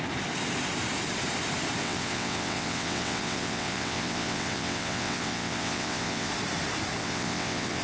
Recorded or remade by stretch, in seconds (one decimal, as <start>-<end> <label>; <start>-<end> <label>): 0.0-1.8 recorded; 1.8-6.3 remade; 6.3-7.0 recorded; 7.0-7.8 remade